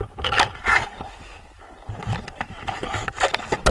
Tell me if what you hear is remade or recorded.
recorded